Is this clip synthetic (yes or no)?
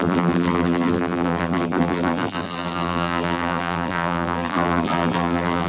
yes